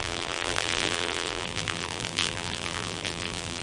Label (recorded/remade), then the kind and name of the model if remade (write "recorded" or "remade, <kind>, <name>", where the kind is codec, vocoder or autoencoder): remade, vocoder, BigVGAN v2